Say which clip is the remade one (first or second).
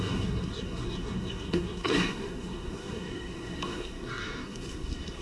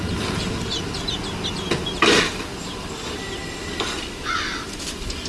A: first